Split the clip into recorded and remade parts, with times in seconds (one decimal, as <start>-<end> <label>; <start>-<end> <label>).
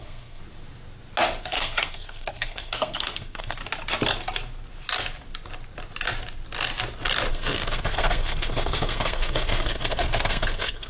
0.0-0.4 remade; 0.4-1.4 recorded; 1.4-3.6 remade; 3.6-7.3 recorded; 7.3-10.9 remade